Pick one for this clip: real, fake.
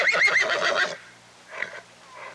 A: real